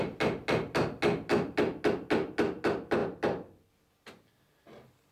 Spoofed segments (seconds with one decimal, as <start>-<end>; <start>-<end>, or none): none